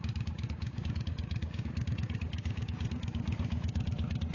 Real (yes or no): no